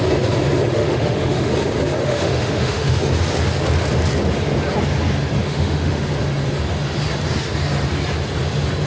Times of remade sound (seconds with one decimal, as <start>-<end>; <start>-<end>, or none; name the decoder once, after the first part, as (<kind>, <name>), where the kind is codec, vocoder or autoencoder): 0.7-1.5 (autoencoder, DAC-VAE); 2.0-3.0; 5.4-6.0